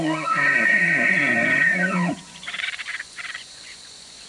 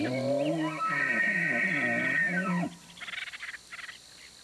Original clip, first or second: second